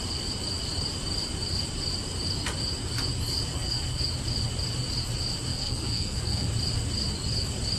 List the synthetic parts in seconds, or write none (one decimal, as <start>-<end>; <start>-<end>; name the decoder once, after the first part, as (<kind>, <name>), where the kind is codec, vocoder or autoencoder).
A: 3.5-4.0 (codec, SNAC); 5.5-6.5